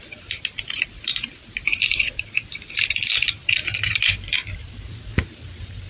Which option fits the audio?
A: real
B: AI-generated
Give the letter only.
B